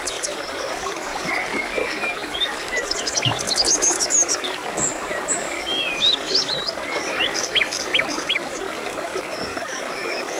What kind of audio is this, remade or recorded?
remade